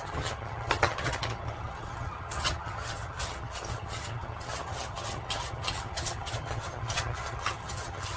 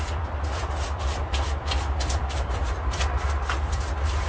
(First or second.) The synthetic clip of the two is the first